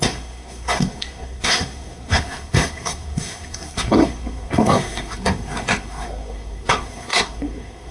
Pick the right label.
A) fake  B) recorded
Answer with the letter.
A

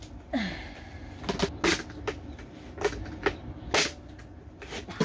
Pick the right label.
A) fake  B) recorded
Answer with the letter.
B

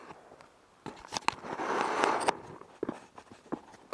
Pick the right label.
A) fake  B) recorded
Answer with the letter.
B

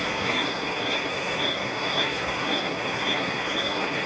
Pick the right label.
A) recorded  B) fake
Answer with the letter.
B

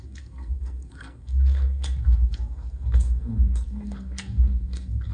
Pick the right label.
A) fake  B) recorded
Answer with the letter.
A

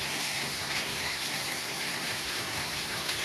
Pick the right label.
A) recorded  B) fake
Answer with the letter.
B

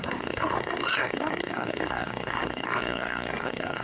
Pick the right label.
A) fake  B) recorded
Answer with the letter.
A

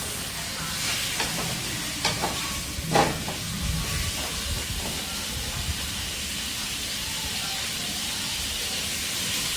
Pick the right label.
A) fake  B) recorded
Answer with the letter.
B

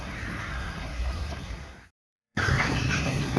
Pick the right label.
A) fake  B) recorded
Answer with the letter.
A